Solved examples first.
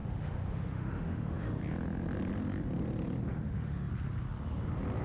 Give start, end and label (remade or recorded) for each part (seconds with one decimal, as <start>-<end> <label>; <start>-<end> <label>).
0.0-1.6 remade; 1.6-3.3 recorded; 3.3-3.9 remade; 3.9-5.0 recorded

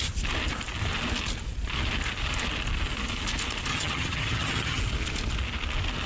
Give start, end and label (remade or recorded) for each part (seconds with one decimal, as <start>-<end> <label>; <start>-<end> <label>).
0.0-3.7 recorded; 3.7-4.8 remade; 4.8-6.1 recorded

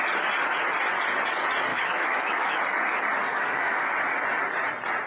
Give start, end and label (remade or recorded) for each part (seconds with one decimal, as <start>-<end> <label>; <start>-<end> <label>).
0.0-1.7 recorded; 1.7-2.6 remade; 2.6-3.3 recorded; 3.3-3.9 remade; 3.9-5.1 recorded

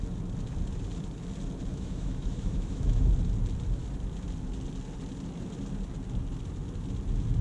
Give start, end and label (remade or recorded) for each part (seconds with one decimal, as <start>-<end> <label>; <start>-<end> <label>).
0.0-1.7 recorded; 1.7-3.1 remade; 3.1-7.4 recorded

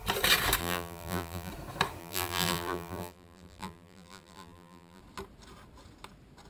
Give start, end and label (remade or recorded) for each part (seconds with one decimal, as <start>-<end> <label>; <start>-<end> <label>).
0.0-0.6 recorded; 0.6-1.5 remade; 1.5-2.0 recorded; 2.0-5.0 remade; 5.0-6.5 recorded